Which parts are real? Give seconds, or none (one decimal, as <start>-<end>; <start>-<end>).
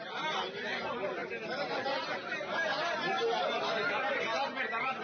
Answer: 0.0-5.0